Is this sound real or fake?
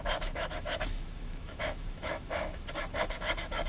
fake